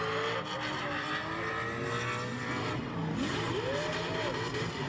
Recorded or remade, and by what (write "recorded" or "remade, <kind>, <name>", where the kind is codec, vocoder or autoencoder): recorded